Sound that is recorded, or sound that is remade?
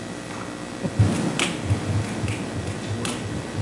recorded